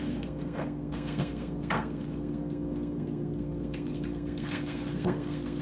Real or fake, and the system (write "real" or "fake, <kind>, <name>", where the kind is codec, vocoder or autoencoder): fake, codec, SNAC